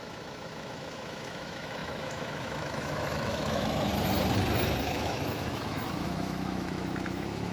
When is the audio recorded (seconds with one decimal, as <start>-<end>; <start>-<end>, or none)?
3.9-4.8